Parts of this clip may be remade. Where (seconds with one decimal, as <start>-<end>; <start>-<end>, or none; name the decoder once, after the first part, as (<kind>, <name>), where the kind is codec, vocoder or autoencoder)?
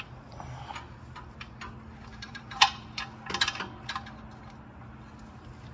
2.1-3.0 (vocoder, BigVGAN v2)